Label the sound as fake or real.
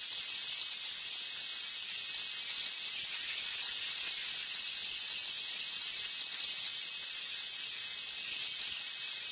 real